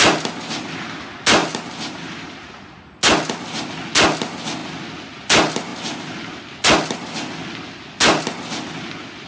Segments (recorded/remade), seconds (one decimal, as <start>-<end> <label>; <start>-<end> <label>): 0.0-1.4 recorded; 1.4-2.8 remade; 2.8-5.7 recorded; 5.7-6.4 remade; 6.4-9.3 recorded